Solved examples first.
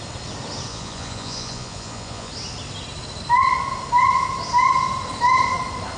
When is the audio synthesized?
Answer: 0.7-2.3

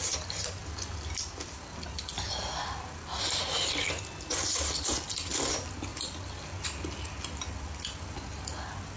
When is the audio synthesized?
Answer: none

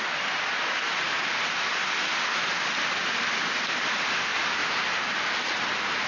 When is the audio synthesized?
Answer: none

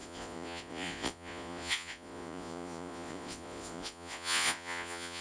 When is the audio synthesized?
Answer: 0.0-5.2